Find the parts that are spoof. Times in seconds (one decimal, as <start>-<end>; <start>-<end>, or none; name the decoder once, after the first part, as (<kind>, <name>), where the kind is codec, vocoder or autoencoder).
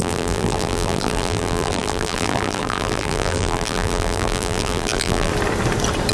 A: 0.0-5.3 (vocoder, BigVGAN v2)